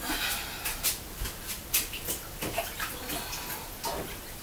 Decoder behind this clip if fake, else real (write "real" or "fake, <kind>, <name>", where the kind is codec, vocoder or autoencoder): real